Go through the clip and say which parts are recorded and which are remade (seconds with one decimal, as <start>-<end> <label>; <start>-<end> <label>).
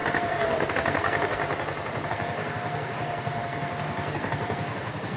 0.0-1.4 remade; 1.4-2.1 recorded; 2.1-5.2 remade